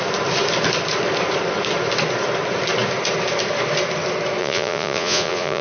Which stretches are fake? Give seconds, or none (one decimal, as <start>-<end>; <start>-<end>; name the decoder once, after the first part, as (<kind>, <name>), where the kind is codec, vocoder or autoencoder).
4.4-5.6 (vocoder, Vocos)